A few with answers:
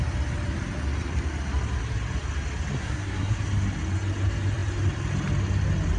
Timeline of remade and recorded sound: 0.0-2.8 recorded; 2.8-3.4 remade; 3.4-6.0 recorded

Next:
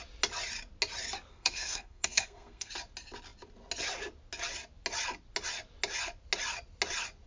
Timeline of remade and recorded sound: 0.0-1.3 recorded; 1.3-2.7 remade; 2.7-7.3 recorded

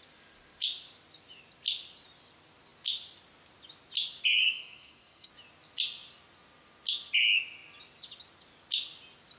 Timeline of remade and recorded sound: 0.0-4.4 recorded; 4.4-5.3 remade; 5.3-9.4 recorded

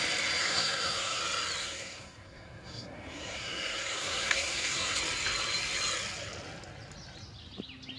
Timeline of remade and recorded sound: 0.0-0.4 recorded; 0.4-1.2 remade; 1.2-1.6 recorded; 1.6-5.0 remade; 5.0-8.0 recorded

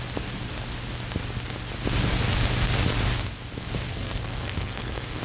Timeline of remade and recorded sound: 0.0-3.9 recorded; 3.9-5.2 remade

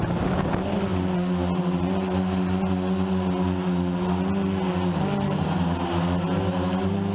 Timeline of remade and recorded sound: 0.0-7.1 recorded

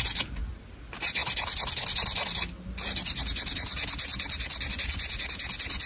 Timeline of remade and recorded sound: 0.0-5.9 recorded